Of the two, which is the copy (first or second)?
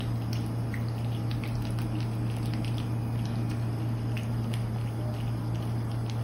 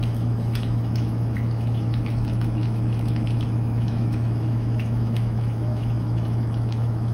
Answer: second